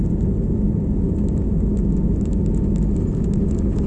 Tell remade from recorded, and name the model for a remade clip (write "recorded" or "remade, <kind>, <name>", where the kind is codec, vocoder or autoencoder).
recorded